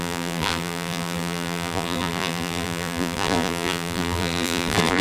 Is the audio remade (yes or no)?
yes